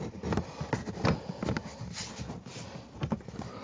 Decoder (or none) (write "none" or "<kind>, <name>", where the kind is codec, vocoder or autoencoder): none